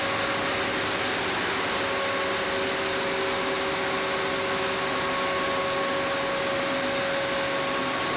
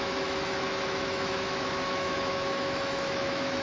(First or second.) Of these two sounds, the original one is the first